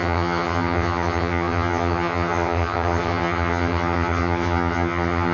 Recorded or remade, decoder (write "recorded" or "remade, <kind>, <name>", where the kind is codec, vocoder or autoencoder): remade, vocoder, HiFi-GAN